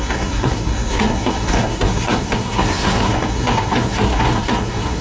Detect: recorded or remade remade